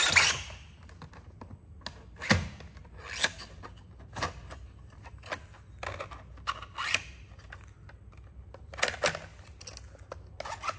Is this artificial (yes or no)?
no